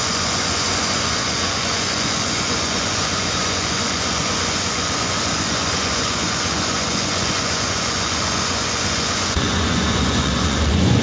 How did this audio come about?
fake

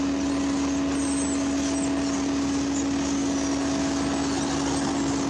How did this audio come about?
real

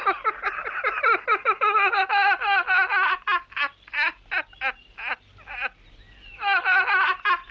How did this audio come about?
real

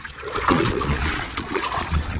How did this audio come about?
fake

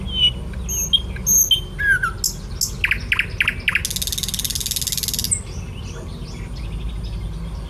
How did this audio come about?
real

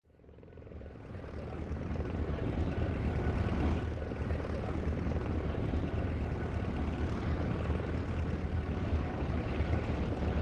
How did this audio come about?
fake